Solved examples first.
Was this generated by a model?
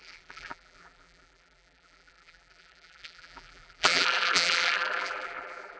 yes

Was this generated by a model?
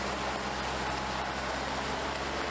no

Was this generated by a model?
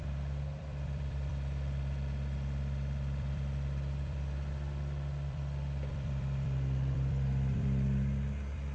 yes